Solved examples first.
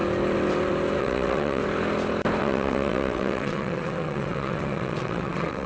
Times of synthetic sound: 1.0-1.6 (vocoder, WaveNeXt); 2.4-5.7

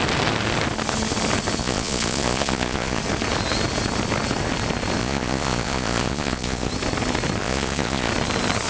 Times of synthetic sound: 1.6-3.0 (vocoder, Vocos); 5.0-6.7; 7.4-8.1

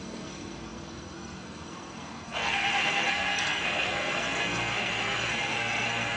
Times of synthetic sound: 0.0-6.2 (codec, SNAC)